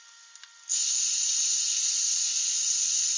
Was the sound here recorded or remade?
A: recorded